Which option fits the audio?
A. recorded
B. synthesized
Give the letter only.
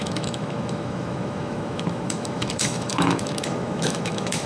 B